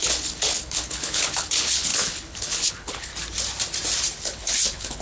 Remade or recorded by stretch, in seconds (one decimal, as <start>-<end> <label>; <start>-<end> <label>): 0.0-3.1 remade; 3.1-4.2 recorded; 4.2-5.0 remade